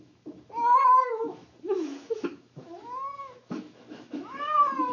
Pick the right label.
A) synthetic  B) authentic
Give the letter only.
A